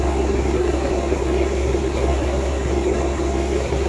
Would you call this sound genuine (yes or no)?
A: no